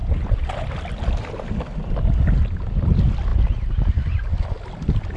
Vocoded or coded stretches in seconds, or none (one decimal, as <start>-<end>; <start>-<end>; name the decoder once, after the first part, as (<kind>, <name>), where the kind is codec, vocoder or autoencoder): none